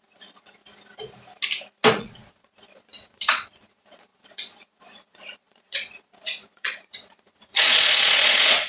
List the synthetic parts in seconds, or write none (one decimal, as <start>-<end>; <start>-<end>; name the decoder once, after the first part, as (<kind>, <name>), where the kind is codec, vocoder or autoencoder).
0.0-0.6 (vocoder, Vocos); 1.9-8.7